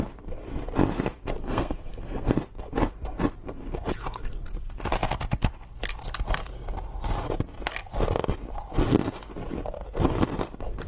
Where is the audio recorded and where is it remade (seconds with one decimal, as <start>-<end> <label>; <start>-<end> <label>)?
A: 0.0-1.4 recorded; 1.4-2.3 remade; 2.3-10.9 recorded